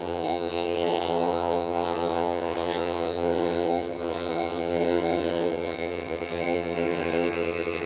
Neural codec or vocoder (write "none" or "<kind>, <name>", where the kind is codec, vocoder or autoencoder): vocoder, HiFi-GAN